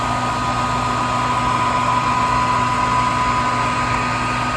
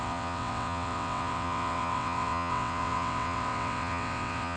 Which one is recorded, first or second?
first